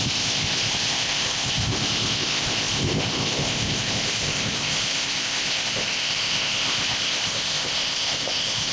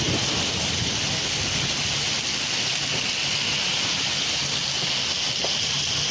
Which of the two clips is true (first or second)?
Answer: second